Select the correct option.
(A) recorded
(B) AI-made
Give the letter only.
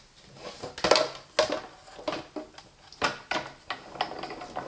A